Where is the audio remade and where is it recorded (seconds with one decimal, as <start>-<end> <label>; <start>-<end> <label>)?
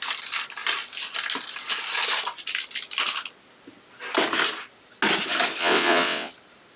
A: 0.0-5.6 recorded; 5.6-6.3 remade; 6.3-6.8 recorded